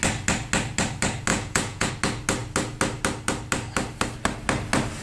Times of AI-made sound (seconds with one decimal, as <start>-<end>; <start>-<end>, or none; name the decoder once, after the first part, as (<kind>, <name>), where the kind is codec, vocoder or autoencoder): 1.3-1.9 (vocoder, Vocos)